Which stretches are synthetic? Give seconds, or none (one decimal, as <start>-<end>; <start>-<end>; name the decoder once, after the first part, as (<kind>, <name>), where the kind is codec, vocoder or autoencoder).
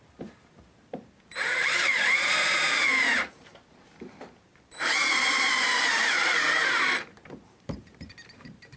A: 0.0-4.5 (vocoder, BigVGAN v2); 5.1-8.8